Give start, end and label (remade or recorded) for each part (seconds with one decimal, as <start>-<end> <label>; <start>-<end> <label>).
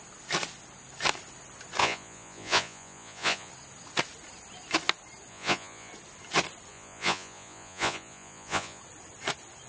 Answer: 0.0-1.8 recorded; 1.8-3.5 remade; 3.5-5.3 recorded; 5.3-5.9 remade; 5.9-6.7 recorded; 6.7-8.8 remade; 8.8-9.7 recorded